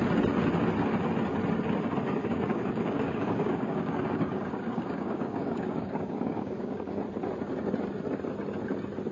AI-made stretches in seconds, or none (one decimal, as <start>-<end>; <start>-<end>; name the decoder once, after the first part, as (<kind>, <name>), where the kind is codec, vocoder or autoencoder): 2.2-7.0 (codec, DAC)

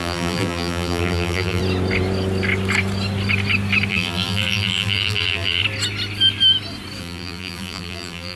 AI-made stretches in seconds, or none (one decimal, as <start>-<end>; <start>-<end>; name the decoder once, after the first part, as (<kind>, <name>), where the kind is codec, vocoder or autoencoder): 0.0-1.6 (vocoder, BigVGAN v2); 3.9-5.6; 7.0-8.4

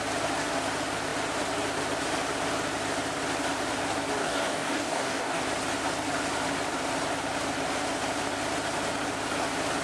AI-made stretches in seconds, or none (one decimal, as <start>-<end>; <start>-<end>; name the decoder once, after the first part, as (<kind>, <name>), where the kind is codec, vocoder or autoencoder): 4.2-5.4 (codec, DAC)

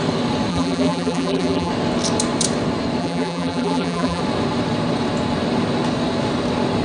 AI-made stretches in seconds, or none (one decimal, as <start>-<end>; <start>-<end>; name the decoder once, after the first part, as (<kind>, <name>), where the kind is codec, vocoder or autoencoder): 0.5-1.7 (vocoder, BigVGAN v2); 3.0-4.2

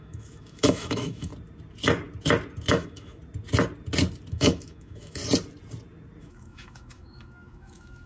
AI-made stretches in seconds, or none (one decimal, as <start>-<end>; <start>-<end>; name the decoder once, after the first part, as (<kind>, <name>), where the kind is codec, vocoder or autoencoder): 0.0-1.3 (autoencoder, DAC-VAE); 2.7-3.2; 4.3-5.2; 6.2-8.1

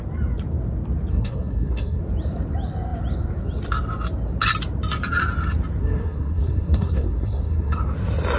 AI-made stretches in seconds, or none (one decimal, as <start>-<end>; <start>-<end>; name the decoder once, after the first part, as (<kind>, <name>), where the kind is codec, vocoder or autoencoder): 1.1-2.0 (codec, SNAC); 5.8-7.8

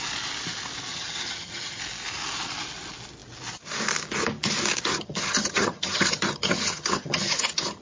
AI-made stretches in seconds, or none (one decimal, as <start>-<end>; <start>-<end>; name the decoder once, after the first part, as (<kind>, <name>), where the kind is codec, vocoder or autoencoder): 0.9-1.8 (vocoder, HiFi-GAN); 4.9-7.8

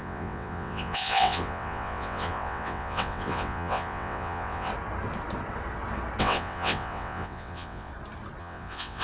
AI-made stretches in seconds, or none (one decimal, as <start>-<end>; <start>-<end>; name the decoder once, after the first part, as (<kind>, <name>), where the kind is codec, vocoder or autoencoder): 0.0-4.7 (vocoder, WaveNeXt); 6.2-7.9; 8.4-9.0